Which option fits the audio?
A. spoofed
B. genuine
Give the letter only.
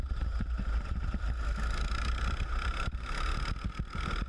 B